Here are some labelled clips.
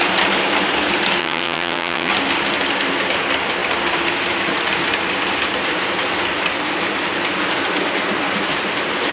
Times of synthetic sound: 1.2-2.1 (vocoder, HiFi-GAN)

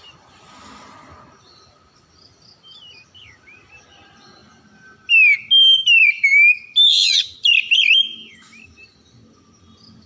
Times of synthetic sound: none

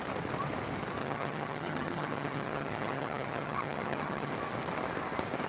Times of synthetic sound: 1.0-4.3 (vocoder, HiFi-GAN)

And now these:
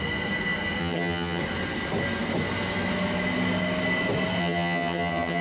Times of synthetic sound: 0.8-1.4 (vocoder, HiFi-GAN); 4.4-5.4

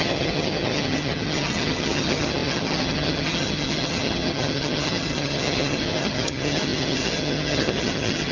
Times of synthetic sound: 0.0-8.3 (vocoder, HiFi-GAN)

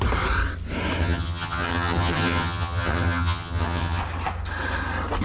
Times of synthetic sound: 1.0-4.0 (vocoder, HiFi-GAN)

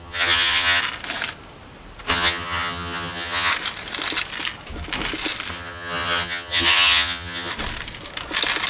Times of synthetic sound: 0.0-0.8 (vocoder, HiFi-GAN); 2.1-3.5; 5.5-7.5

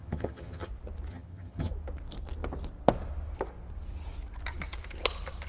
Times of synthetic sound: 0.0-0.7 (vocoder, HiFi-GAN); 1.1-1.7